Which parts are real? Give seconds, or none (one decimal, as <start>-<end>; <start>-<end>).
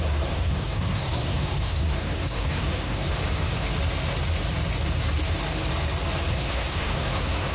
3.1-6.3